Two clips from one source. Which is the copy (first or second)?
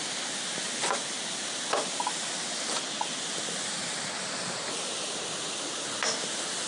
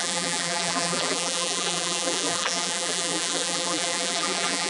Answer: second